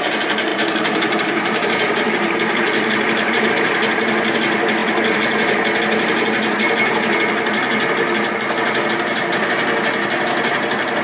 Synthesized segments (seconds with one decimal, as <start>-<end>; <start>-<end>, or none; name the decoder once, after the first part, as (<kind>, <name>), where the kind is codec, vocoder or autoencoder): 0.5-3.5 (vocoder, BigVGAN v2)

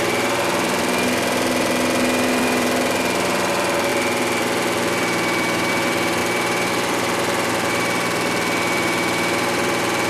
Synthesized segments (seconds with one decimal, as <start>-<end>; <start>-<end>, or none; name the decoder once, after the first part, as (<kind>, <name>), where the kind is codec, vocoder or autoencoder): 0.0-10.1 (vocoder, BigVGAN v2)

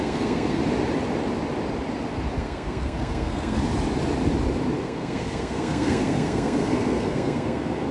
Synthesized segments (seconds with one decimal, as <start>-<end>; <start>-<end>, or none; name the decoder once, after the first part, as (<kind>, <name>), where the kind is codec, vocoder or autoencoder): 0.0-0.6 (codec, SNAC); 2.4-3.6; 4.8-7.9

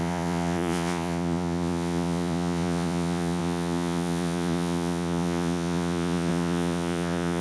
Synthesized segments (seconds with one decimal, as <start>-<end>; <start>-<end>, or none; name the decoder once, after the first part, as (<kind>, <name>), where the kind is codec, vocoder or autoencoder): 0.0-7.4 (vocoder, Vocos)

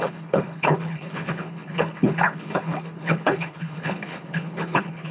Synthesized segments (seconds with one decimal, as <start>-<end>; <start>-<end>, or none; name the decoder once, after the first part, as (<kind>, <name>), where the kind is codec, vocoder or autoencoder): 0.0-5.1 (codec, HILCodec)

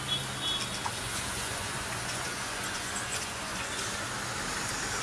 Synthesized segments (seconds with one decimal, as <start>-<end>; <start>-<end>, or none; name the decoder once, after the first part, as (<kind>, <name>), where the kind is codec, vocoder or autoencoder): 0.8-3.8 (vocoder, Vocos)